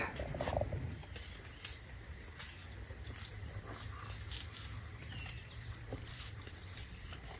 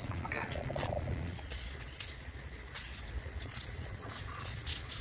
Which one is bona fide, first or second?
first